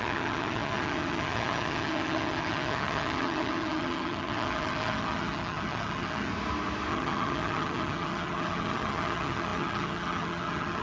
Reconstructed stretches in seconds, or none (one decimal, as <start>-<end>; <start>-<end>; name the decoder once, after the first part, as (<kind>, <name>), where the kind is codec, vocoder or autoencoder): 0.0-6.3 (vocoder, HiFi-GAN); 6.9-10.8